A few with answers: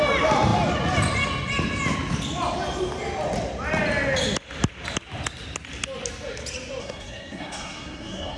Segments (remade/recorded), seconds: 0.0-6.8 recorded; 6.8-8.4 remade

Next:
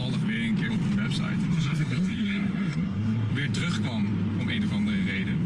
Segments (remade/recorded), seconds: 0.0-1.5 recorded; 1.5-3.3 remade; 3.3-5.5 recorded

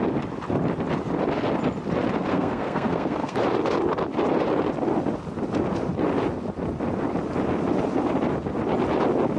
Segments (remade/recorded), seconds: 0.0-2.3 recorded; 2.3-3.4 remade; 3.4-9.4 recorded